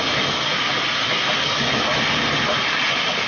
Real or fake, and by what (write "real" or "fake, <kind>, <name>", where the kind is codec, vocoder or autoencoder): real